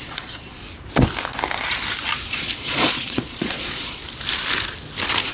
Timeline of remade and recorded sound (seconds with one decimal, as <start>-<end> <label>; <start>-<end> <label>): 0.0-0.6 remade; 0.6-2.3 recorded; 2.3-4.0 remade; 4.0-5.3 recorded